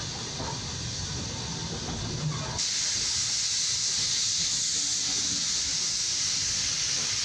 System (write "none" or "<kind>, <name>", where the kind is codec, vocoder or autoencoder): none